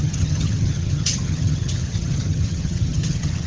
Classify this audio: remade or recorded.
remade